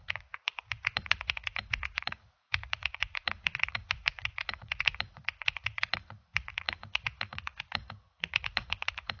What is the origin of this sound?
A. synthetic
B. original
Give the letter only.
A